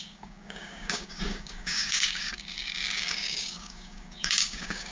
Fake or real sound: fake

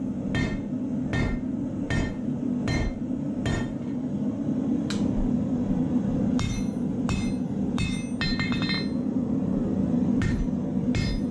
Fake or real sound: real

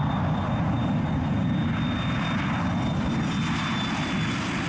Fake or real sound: real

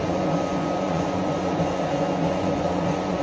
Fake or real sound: fake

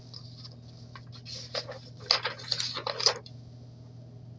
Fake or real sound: real